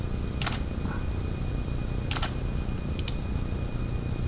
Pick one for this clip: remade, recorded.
recorded